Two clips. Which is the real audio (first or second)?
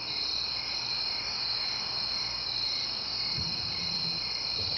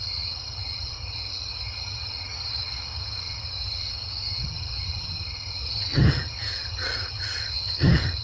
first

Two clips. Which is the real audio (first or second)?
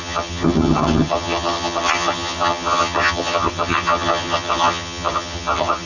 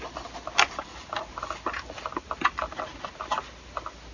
second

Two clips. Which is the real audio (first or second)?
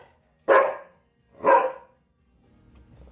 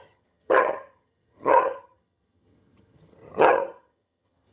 first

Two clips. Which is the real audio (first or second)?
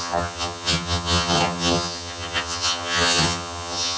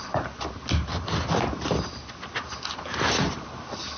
second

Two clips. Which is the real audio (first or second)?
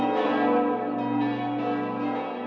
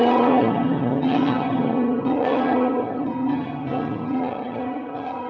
first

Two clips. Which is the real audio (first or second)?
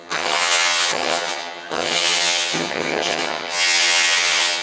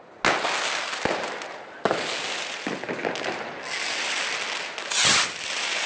second